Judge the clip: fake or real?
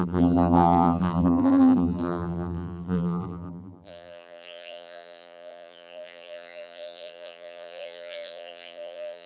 fake